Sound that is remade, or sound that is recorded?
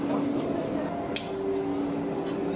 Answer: recorded